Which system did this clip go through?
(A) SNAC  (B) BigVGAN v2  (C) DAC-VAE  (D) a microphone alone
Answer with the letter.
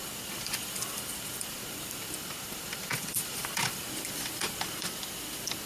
B